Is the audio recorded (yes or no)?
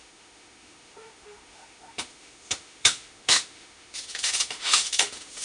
no